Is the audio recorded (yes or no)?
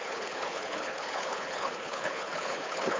no